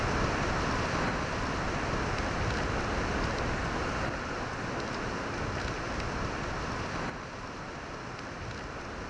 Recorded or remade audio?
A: recorded